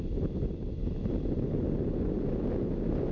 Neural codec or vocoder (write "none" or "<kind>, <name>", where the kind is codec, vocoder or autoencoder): none